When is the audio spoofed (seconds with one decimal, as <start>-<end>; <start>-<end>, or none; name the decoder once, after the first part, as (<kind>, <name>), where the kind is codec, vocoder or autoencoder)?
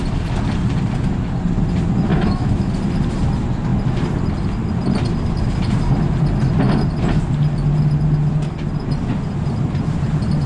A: 2.1-2.7 (autoencoder, DAC-VAE)